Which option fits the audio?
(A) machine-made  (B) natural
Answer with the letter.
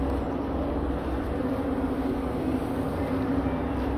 B